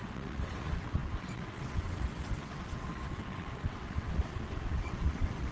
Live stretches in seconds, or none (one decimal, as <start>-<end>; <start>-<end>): none